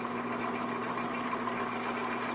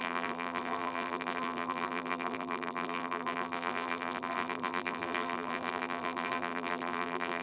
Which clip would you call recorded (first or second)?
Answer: first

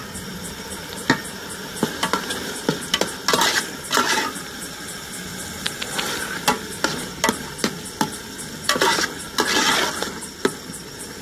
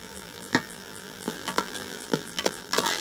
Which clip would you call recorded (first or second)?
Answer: first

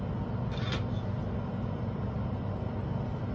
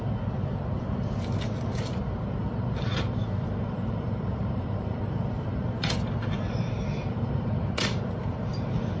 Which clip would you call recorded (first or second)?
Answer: first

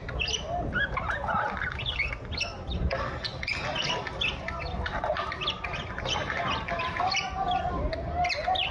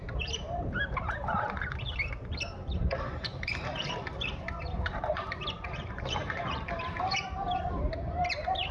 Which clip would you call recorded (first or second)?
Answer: first